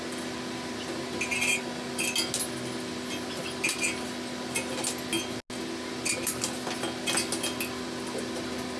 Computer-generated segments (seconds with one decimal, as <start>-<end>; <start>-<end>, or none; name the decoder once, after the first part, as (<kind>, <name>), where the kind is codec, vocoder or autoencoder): none